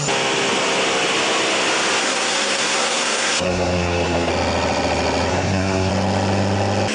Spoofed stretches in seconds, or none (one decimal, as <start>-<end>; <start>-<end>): 2.0-4.3; 5.3-5.9